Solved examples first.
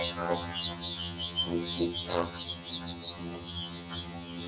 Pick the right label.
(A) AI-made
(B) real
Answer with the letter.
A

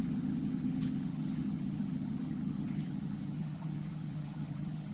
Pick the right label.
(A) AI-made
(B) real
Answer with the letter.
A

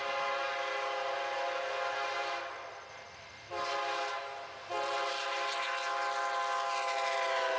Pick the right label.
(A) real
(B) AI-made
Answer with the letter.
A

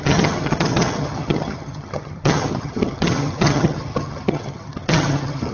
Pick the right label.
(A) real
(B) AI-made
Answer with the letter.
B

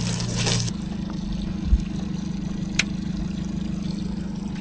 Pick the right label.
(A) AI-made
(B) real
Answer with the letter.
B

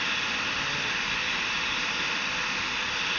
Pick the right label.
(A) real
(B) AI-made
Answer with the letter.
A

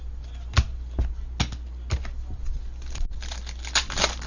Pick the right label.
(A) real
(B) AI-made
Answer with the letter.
A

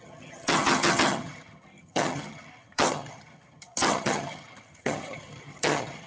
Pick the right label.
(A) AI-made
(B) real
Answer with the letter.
A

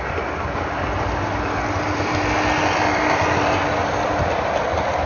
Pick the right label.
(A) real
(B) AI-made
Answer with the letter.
A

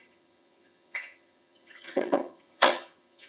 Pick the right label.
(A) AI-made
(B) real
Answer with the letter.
A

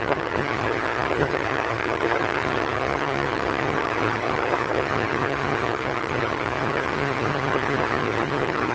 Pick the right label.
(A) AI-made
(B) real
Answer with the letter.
A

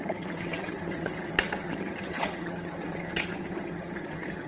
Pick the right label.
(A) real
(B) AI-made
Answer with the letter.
B